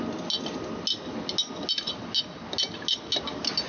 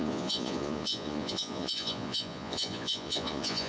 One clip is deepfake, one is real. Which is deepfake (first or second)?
second